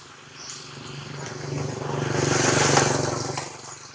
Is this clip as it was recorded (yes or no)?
yes